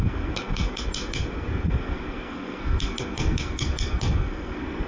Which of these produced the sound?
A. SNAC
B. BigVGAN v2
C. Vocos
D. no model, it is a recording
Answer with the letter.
A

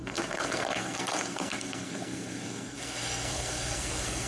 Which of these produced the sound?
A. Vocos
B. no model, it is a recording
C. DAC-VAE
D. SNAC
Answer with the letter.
D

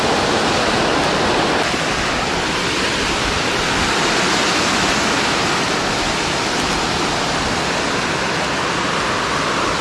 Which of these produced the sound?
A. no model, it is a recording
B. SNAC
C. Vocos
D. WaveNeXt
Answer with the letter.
A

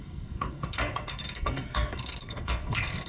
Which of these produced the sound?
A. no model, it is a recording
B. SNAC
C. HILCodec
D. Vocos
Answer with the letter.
B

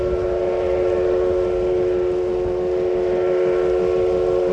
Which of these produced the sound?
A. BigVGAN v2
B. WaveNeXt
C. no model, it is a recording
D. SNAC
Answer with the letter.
C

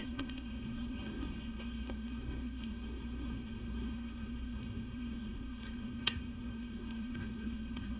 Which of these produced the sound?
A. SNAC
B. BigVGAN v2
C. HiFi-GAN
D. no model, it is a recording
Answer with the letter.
A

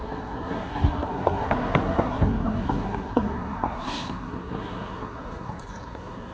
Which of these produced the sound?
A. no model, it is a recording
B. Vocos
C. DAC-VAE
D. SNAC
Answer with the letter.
D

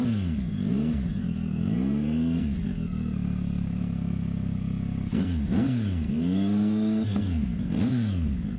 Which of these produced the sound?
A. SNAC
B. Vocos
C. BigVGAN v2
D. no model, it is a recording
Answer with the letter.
A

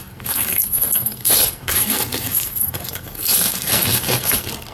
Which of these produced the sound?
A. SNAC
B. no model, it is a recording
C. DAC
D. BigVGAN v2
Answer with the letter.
A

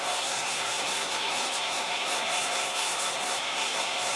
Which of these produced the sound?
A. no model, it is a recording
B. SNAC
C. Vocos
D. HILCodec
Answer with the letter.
B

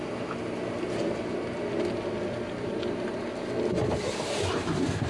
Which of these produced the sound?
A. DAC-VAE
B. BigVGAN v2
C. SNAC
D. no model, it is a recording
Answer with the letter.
D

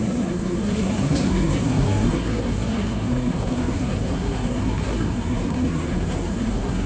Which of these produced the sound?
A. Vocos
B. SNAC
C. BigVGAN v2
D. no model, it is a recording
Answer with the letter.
B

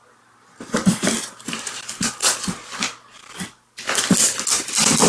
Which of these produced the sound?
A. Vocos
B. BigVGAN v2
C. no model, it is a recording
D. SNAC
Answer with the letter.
C